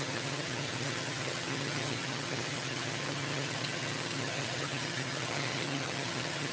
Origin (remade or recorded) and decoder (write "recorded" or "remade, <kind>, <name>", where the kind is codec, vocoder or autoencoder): remade, vocoder, HiFi-GAN